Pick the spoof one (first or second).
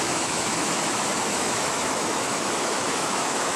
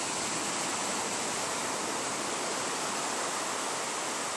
first